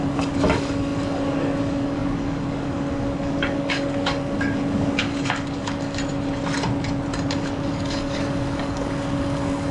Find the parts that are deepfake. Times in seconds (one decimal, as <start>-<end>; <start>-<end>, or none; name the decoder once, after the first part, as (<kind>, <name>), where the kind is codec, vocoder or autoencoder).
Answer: 0.0-6.0 (codec, DAC); 7.3-9.7